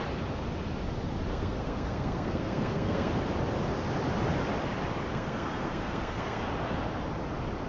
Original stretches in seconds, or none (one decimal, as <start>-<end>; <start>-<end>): 0.0-1.3; 3.1-5.1; 6.4-7.7